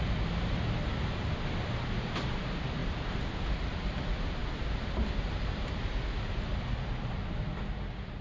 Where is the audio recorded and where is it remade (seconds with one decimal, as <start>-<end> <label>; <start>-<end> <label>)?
0.0-4.4 recorded; 4.4-5.9 remade; 5.9-8.2 recorded